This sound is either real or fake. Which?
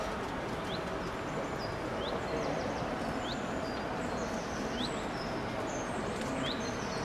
real